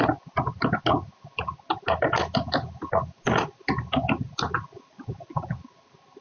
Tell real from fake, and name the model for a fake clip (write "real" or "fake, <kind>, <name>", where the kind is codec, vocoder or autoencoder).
real